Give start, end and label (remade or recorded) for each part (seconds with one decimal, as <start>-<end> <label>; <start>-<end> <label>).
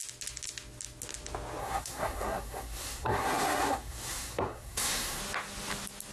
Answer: 0.0-1.6 recorded; 1.6-5.2 remade; 5.2-6.1 recorded